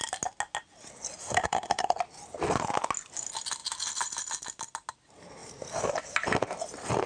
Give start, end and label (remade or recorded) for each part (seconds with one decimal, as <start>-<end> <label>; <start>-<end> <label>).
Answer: 0.0-1.2 recorded; 1.2-2.0 remade; 2.0-7.1 recorded